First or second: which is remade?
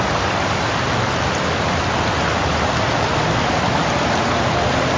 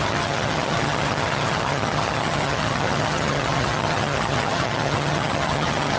second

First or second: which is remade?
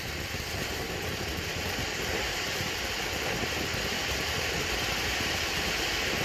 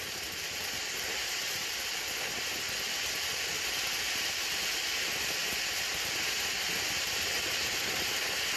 first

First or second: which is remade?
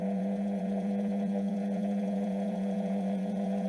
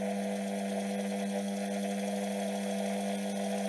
first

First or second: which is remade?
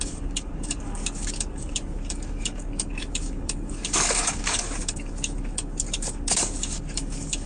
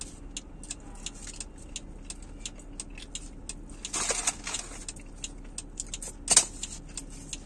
first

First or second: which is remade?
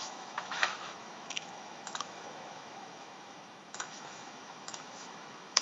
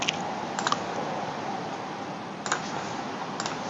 first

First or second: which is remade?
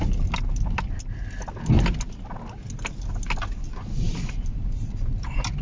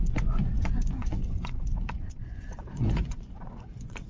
second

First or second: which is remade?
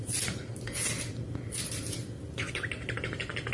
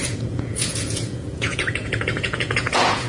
second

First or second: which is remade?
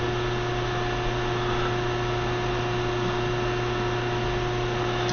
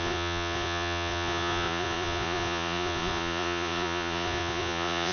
second